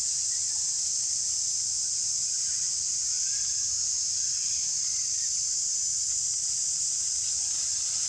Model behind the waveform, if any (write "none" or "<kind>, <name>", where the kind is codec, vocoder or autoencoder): none